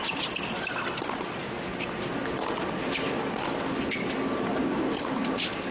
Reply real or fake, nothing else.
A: real